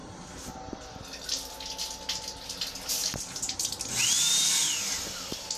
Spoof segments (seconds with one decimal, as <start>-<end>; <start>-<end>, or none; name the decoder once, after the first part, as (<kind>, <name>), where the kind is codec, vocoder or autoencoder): 0.0-1.0 (vocoder, BigVGAN v2)